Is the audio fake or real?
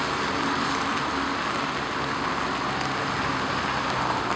real